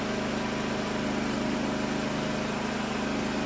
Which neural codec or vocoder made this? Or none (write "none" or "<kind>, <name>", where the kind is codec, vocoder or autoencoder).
none